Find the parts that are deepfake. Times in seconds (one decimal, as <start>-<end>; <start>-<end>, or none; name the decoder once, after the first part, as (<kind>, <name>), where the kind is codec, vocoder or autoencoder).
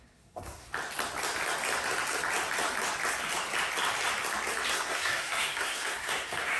0.0-0.7 (codec, SNAC); 4.7-6.6